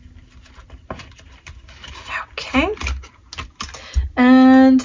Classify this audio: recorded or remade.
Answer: recorded